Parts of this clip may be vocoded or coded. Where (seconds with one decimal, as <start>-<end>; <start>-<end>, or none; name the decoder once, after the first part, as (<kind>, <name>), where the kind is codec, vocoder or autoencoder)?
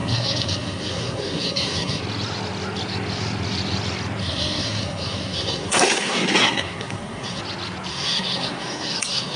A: 0.0-2.0 (codec, SNAC); 4.2-7.4; 7.9-9.4